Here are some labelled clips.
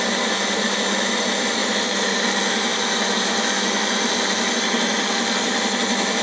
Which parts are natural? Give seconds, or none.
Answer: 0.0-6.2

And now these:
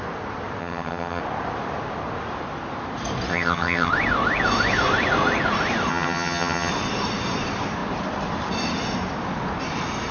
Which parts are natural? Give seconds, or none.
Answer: 0.0-0.6; 1.2-3.3; 3.9-5.9; 6.7-10.1

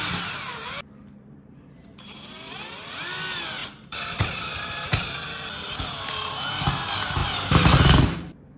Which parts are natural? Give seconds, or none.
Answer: 0.0-0.5; 2.6-3.6; 4.5-7.2